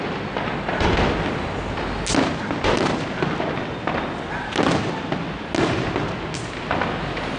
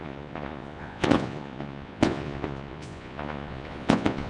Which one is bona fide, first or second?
first